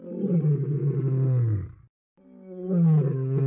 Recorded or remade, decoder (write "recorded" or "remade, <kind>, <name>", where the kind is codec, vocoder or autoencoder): recorded